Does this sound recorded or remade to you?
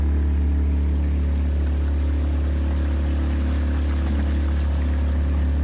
recorded